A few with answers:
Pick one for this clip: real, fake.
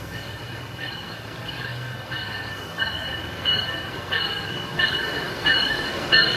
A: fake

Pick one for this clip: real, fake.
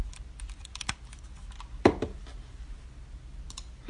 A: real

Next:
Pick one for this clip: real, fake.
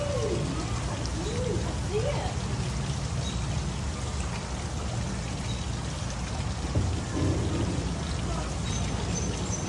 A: real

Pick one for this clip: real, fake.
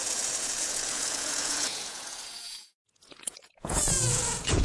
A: fake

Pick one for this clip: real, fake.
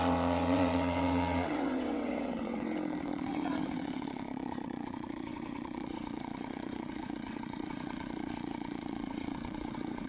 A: fake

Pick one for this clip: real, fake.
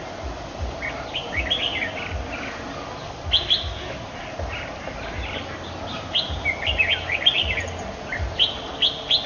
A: real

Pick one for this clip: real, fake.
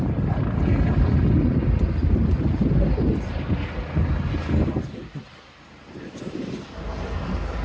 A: real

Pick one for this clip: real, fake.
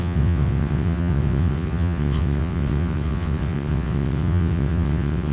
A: fake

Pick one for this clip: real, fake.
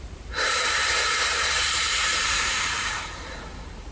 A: fake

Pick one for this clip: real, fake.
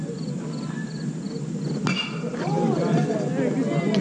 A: real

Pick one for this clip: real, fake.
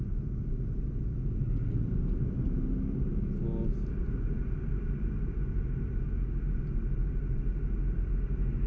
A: real